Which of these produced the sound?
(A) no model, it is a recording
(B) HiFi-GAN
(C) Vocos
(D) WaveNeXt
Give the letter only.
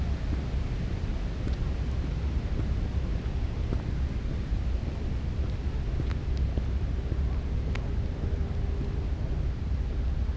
A